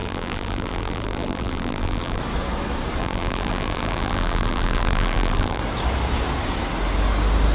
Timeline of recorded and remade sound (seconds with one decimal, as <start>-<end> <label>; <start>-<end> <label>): 0.0-2.2 remade; 2.2-3.0 recorded; 3.0-5.6 remade; 5.6-7.5 recorded